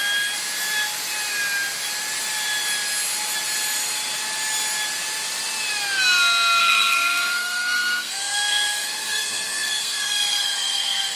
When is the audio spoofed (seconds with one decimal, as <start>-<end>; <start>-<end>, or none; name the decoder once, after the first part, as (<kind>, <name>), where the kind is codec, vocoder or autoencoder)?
6.6-11.2 (codec, SNAC)